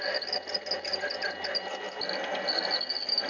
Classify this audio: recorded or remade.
recorded